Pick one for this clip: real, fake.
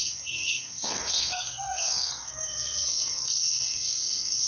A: fake